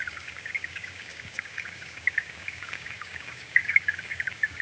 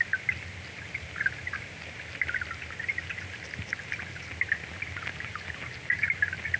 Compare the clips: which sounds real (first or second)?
second